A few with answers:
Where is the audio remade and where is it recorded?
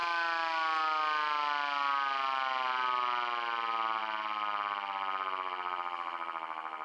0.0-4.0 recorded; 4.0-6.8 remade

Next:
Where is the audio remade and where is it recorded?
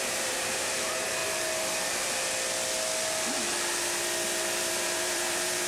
0.0-1.2 remade; 1.2-4.6 recorded; 4.6-5.7 remade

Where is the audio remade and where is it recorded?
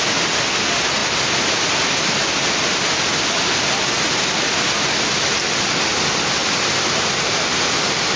0.0-1.0 recorded; 1.0-2.1 remade; 2.1-8.2 recorded